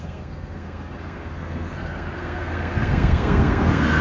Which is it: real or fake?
fake